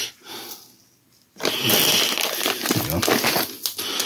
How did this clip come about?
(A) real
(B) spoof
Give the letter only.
A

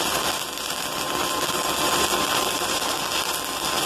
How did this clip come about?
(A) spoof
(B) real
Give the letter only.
B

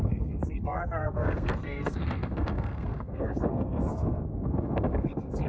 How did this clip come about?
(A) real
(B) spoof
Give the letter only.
B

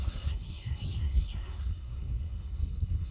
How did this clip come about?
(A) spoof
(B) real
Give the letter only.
A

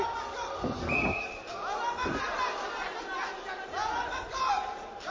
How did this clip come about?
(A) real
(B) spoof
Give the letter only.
A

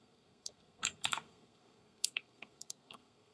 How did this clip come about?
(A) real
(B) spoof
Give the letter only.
B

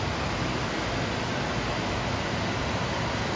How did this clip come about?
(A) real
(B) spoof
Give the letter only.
A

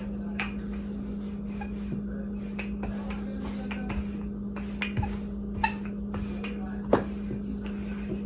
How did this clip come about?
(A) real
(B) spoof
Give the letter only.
A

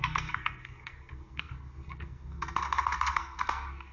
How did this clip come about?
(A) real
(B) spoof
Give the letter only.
B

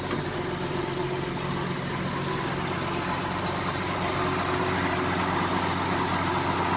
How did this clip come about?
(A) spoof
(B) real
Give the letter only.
B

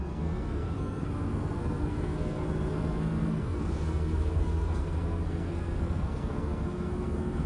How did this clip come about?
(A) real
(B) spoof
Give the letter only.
B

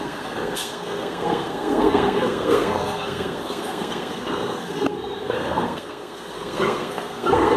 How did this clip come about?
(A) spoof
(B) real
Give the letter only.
A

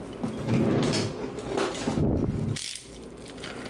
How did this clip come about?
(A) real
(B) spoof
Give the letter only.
A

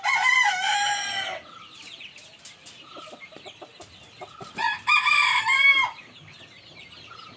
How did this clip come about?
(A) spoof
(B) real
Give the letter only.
B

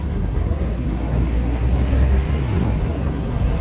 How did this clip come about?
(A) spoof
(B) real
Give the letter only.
A